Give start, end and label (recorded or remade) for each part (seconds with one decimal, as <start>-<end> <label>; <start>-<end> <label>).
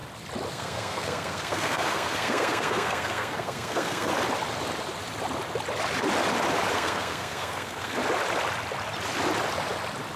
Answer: 0.0-0.5 recorded; 0.5-4.1 remade; 4.1-6.7 recorded; 6.7-8.0 remade; 8.0-10.2 recorded